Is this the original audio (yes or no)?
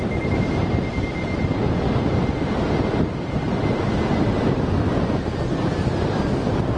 yes